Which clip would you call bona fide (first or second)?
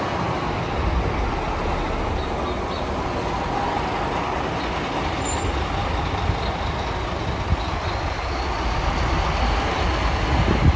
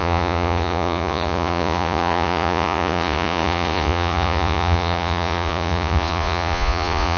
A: first